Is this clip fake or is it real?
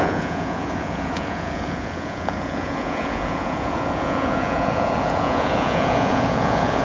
fake